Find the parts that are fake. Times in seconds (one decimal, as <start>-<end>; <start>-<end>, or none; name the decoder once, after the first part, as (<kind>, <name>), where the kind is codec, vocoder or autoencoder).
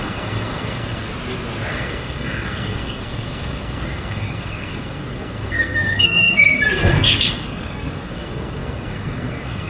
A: 0.0-1.1 (codec, SNAC); 1.7-9.7